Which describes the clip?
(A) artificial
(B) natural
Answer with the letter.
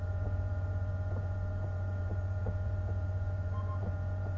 A